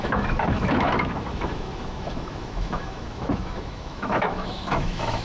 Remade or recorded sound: remade